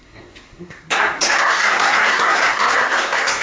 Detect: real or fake fake